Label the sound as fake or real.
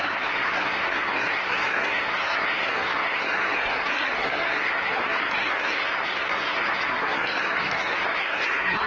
fake